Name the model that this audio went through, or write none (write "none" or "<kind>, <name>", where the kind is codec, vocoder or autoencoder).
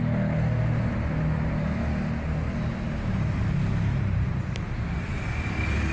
none